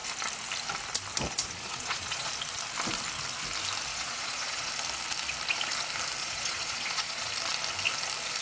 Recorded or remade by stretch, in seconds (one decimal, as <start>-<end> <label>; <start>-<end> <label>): 0.0-1.4 recorded; 1.4-2.3 remade; 2.3-3.9 recorded; 3.9-4.7 remade; 4.7-6.2 recorded; 6.2-7.3 remade; 7.3-8.4 recorded